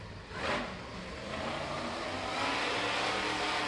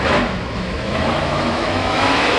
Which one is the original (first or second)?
first